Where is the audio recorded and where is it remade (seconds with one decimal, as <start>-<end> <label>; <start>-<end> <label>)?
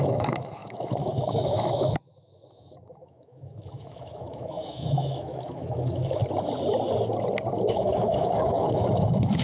0.0-6.2 remade; 6.2-7.7 recorded; 7.7-9.4 remade